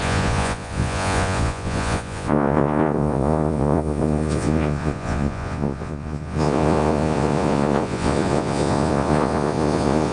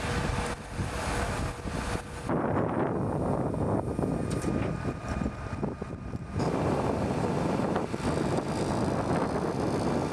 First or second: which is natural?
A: second